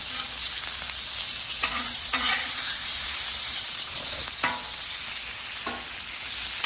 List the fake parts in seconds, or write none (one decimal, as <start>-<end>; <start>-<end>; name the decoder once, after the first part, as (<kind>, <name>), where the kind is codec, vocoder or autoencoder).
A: 1.5-4.2 (vocoder, Vocos)